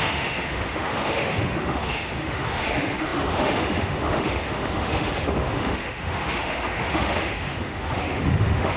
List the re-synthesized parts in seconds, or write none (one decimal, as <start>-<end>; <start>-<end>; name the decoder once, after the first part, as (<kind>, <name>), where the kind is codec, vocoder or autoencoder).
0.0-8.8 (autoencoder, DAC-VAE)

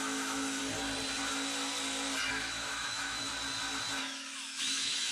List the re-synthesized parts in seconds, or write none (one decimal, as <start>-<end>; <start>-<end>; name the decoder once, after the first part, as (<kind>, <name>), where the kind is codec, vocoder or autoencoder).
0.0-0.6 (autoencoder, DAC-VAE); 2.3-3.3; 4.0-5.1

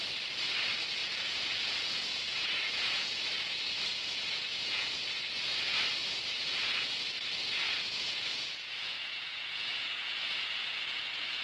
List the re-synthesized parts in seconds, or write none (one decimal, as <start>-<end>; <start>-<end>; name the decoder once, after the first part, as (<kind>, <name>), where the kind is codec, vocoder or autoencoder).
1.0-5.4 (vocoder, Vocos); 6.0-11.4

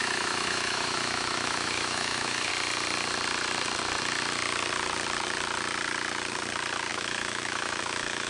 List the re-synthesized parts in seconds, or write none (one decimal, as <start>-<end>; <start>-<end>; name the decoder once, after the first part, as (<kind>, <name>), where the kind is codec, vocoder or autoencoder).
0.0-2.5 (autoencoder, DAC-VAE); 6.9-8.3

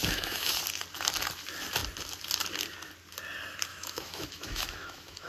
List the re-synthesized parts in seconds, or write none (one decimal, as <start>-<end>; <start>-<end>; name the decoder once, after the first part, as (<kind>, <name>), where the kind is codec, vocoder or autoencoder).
0.0-0.6 (autoencoder, DAC-VAE); 3.7-5.3

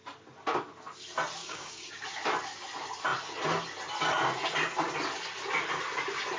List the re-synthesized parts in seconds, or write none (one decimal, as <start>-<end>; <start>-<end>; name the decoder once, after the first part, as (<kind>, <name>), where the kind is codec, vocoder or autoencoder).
1.4-1.9 (codec, DAC)

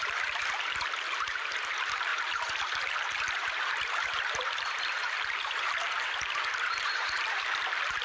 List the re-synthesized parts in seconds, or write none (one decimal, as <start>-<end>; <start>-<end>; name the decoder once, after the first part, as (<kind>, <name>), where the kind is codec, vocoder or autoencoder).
0.0-2.1 (vocoder, BigVGAN v2); 2.8-8.0

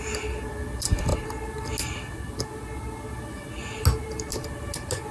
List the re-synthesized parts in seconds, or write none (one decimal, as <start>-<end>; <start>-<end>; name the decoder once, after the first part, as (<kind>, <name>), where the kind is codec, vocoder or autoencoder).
none